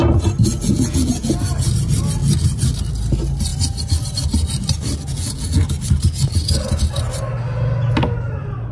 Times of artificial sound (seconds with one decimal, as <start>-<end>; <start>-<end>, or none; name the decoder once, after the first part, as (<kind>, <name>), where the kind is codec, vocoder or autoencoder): 0.4-1.3 (vocoder, Vocos); 5.1-5.6